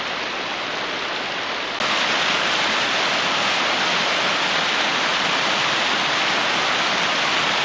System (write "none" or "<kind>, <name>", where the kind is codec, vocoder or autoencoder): none